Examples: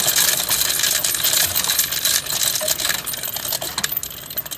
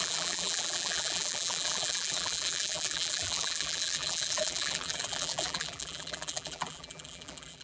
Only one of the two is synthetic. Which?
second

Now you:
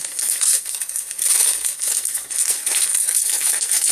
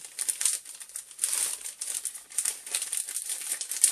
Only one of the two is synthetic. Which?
first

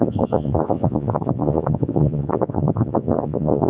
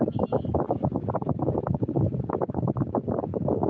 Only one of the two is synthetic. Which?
first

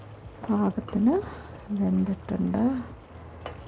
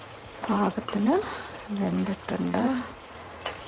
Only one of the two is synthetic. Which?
second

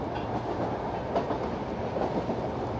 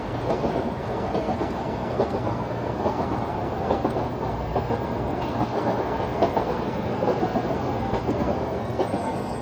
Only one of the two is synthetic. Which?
second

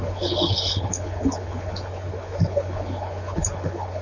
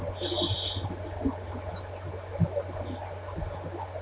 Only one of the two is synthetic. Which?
first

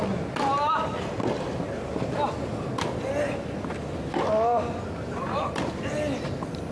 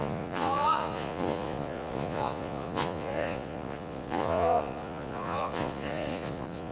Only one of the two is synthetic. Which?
second